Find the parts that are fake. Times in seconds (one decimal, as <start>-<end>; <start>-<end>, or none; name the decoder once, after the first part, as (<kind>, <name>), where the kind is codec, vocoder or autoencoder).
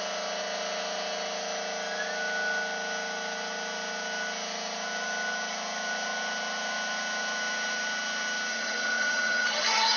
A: 8.5-10.0 (vocoder, HiFi-GAN)